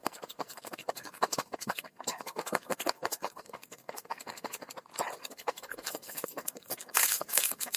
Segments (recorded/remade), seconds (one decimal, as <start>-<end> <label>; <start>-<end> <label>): 0.0-4.7 remade; 4.7-5.2 recorded; 5.2-7.8 remade